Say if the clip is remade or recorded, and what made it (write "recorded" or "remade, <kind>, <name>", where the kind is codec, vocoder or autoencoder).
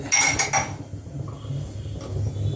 recorded